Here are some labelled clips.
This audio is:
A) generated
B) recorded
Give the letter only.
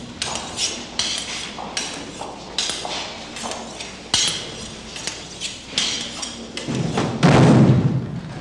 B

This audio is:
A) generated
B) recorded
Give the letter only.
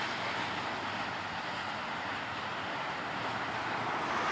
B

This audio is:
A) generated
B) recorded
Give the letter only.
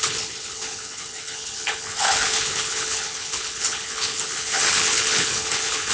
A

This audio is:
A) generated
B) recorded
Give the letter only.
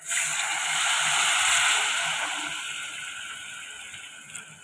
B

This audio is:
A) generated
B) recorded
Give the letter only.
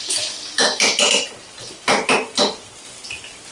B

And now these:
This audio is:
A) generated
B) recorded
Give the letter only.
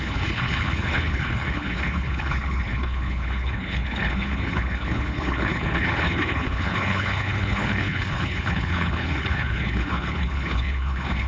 A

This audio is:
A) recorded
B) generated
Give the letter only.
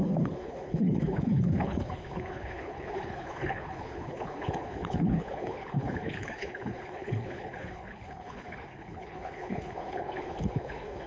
B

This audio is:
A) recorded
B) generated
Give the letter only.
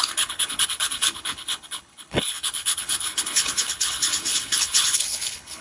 B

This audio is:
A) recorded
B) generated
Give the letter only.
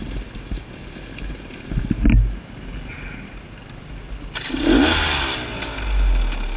A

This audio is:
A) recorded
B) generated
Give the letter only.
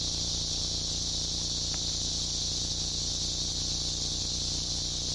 A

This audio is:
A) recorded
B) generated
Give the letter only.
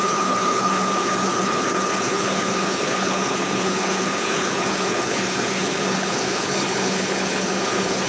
B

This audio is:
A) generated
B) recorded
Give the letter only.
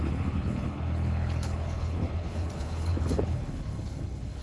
A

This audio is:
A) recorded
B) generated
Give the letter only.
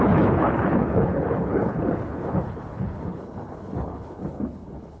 B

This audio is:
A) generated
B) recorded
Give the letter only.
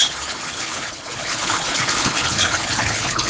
A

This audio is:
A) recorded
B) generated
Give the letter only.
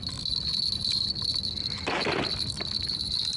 A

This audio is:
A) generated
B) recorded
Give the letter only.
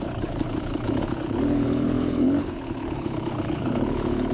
A